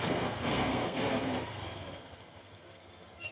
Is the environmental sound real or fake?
fake